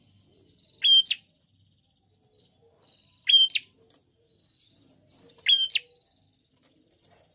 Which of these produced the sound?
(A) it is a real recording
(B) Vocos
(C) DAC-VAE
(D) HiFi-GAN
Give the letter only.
A